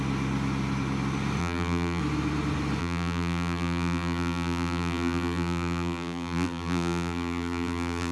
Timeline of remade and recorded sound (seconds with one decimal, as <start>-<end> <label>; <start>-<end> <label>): 0.0-1.4 recorded; 1.4-2.0 remade; 2.0-2.8 recorded; 2.8-8.1 remade